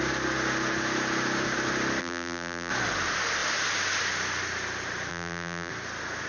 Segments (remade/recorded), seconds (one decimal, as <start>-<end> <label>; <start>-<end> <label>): 0.0-2.0 recorded; 2.0-2.7 remade; 2.7-5.1 recorded; 5.1-5.7 remade; 5.7-6.3 recorded